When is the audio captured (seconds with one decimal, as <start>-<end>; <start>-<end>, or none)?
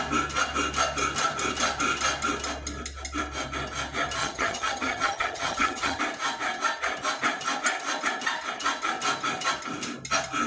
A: 0.0-4.2; 6.0-10.5